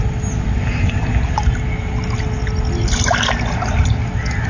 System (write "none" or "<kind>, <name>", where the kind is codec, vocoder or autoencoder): none